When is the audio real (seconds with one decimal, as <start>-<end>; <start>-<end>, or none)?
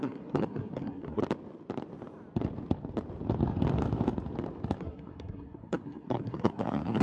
1.2-4.8